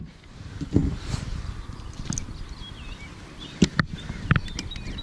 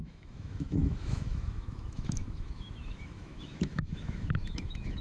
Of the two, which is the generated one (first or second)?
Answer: second